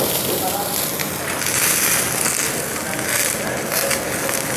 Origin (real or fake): real